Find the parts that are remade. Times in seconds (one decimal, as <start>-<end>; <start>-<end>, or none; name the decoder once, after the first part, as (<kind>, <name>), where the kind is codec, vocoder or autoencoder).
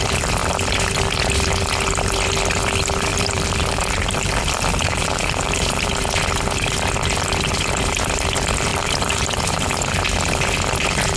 3.1-5.8 (vocoder, BigVGAN v2); 8.7-9.4